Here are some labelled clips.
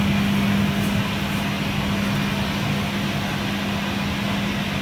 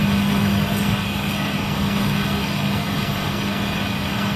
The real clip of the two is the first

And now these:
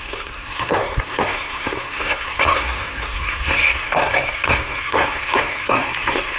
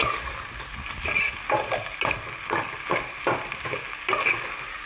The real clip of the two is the second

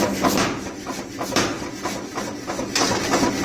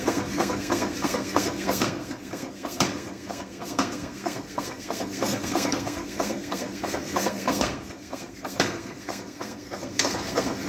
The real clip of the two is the first